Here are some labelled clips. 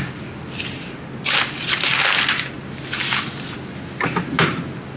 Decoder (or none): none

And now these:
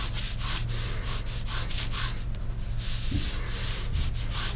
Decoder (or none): none